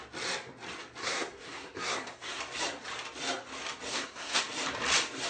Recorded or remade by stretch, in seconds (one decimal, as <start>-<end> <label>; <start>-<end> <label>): 0.0-1.0 recorded; 1.0-2.4 remade; 2.4-3.9 recorded; 3.9-4.4 remade; 4.4-5.3 recorded